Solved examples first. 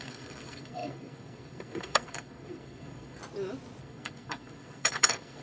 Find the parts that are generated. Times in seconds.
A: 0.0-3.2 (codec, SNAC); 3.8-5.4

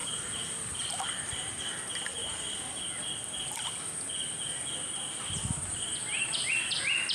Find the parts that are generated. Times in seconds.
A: 0.0-1.0 (vocoder, BigVGAN v2)

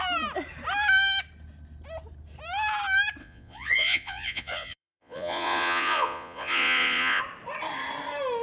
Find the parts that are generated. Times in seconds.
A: 3.2-7.2 (vocoder, Vocos)

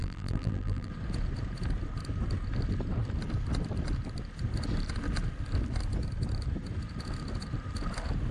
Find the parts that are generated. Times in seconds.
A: 0.0-0.9 (vocoder, BigVGAN v2)

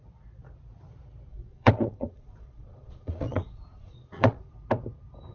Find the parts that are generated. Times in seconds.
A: 1.3-4.5 (vocoder, Vocos)

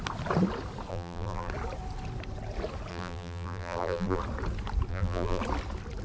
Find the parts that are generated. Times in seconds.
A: 0.9-1.5 (vocoder, BigVGAN v2); 2.9-4.2; 4.9-5.4